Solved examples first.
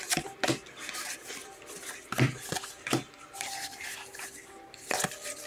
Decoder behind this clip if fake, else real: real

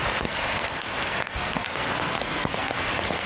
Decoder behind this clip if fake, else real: fake, codec, SNAC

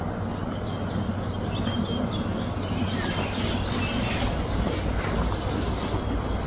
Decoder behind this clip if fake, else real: real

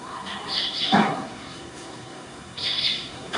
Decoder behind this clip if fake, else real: fake, codec, SNAC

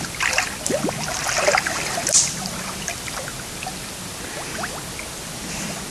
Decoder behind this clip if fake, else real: real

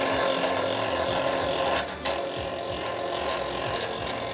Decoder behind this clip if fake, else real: real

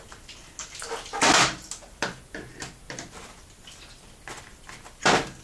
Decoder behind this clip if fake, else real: real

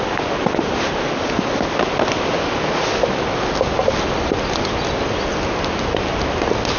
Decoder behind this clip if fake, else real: real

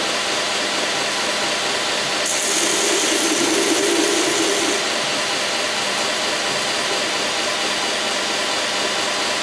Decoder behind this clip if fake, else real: real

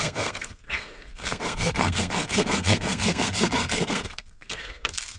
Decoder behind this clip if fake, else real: fake, codec, SNAC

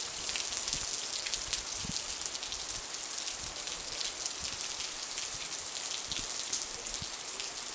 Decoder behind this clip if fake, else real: real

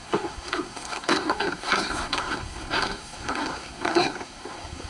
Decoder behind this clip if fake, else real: fake, codec, SNAC